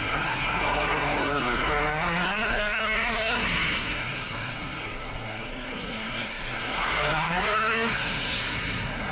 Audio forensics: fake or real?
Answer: fake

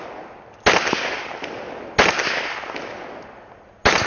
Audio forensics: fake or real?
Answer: real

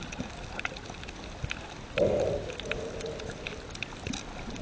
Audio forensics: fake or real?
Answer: real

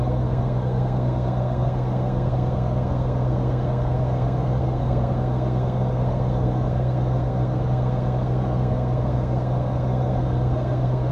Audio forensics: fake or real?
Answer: fake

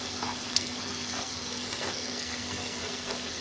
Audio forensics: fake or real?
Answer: fake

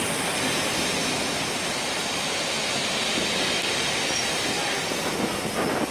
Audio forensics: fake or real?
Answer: real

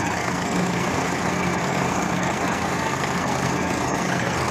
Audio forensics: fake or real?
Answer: fake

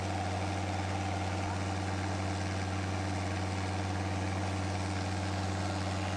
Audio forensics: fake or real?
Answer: real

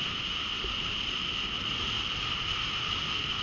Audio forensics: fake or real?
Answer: real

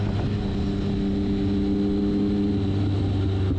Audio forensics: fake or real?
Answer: real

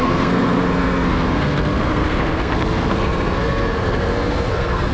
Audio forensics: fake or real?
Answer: fake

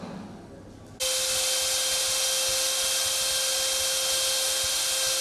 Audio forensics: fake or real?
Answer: real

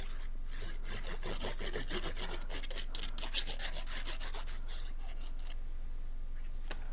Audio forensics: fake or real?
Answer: real